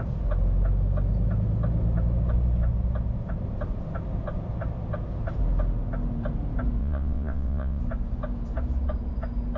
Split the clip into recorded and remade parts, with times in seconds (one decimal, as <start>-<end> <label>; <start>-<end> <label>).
0.0-6.8 recorded; 6.8-7.8 remade; 7.8-9.6 recorded